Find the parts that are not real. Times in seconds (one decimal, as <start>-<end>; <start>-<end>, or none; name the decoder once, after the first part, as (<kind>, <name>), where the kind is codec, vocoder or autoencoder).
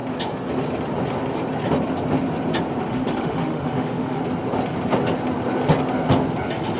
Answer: 2.8-4.2 (autoencoder, DAC-VAE)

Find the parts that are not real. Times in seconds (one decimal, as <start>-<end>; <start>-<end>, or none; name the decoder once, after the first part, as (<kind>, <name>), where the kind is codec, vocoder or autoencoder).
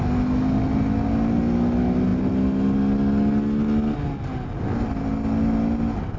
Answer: none